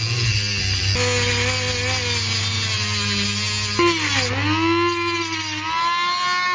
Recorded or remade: recorded